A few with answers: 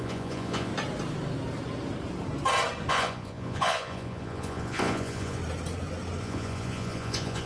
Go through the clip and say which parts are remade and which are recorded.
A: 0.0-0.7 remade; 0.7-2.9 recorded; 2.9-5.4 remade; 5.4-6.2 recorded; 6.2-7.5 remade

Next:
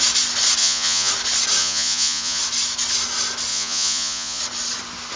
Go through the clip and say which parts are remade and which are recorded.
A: 0.0-0.6 recorded; 0.6-1.1 remade; 1.1-1.6 recorded; 1.6-2.4 remade; 2.4-3.5 recorded; 3.5-4.4 remade; 4.4-5.2 recorded

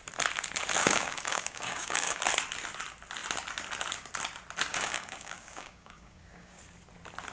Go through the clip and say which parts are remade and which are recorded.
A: 0.0-0.8 recorded; 0.8-2.2 remade; 2.2-4.7 recorded; 4.7-6.6 remade; 6.6-7.3 recorded